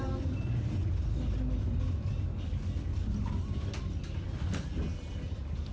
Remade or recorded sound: recorded